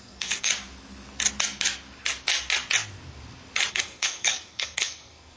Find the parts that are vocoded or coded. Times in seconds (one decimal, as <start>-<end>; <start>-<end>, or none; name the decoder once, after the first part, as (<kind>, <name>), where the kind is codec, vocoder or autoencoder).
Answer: 0.0-0.5 (codec, SNAC); 3.7-5.4